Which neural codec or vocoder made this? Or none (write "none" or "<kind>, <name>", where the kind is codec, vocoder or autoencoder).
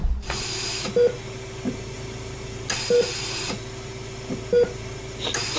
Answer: none